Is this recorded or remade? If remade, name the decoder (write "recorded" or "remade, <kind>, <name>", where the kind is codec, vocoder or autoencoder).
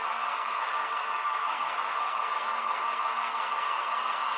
remade, codec, SNAC